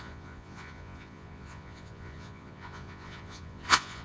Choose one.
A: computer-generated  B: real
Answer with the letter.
A